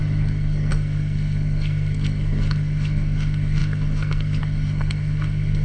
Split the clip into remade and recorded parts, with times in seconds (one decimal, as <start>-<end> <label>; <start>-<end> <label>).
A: 0.0-5.6 remade